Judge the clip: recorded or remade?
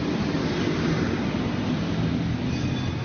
recorded